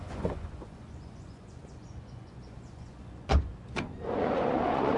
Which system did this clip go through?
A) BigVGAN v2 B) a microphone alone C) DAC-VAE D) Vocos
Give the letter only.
D